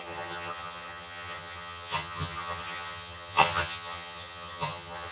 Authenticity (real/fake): fake